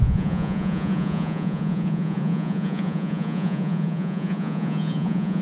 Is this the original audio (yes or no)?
no